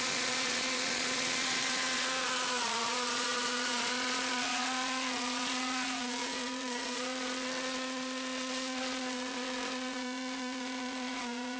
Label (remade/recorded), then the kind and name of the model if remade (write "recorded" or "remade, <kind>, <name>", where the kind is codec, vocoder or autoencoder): remade, vocoder, Vocos